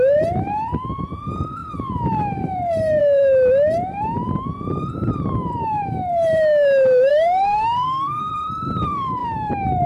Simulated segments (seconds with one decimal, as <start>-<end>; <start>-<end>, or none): 7.1-8.3